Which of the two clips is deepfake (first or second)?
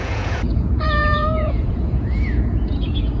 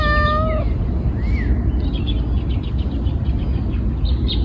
first